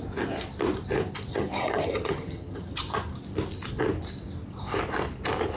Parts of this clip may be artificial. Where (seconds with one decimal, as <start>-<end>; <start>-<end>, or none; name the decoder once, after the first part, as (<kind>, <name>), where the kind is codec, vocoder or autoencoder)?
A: 1.3-2.8 (vocoder, HiFi-GAN)